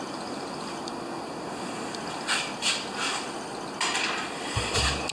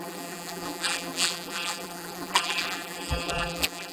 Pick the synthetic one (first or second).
second